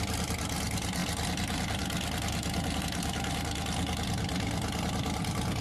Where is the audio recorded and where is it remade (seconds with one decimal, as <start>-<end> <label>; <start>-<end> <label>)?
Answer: 0.0-5.6 recorded